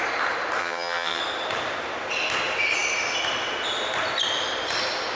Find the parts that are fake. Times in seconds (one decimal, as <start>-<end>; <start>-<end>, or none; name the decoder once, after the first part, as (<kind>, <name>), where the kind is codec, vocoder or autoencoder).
0.6-1.2 (vocoder, HiFi-GAN)